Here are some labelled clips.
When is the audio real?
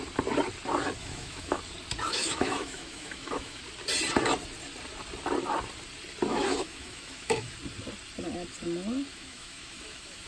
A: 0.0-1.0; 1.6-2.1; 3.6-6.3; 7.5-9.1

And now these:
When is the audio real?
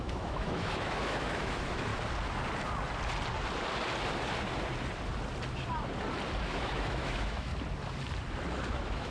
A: 1.9-6.4; 7.5-8.7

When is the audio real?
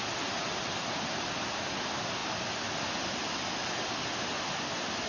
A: 0.0-5.1